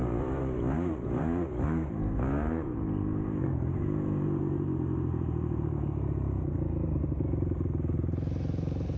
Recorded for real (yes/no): no